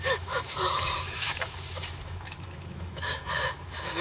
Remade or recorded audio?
remade